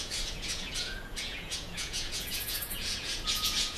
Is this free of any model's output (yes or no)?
no